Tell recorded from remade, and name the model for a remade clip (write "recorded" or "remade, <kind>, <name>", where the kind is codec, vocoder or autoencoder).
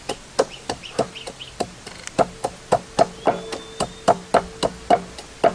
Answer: recorded